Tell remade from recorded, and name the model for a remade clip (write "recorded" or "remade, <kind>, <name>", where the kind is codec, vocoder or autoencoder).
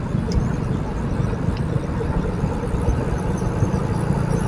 recorded